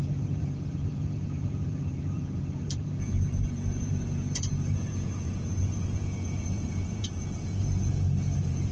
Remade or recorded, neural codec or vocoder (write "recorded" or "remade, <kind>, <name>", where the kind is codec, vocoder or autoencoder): remade, vocoder, Vocos